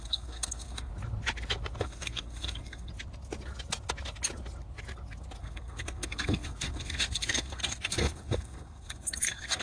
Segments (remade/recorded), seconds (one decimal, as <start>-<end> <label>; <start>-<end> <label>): 0.0-0.9 remade; 0.9-1.8 recorded; 1.8-2.9 remade; 2.9-5.4 recorded; 5.4-9.6 remade